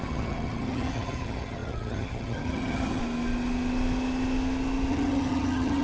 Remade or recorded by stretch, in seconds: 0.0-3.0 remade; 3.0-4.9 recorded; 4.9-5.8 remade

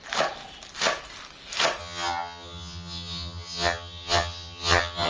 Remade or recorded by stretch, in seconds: 0.0-1.8 recorded; 1.8-5.1 remade

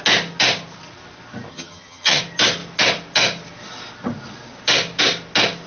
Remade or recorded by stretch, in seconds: 0.0-1.5 recorded; 1.5-2.2 remade; 2.2-5.7 recorded

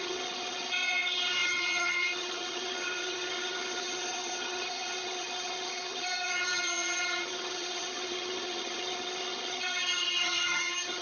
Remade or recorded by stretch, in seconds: 0.0-11.0 remade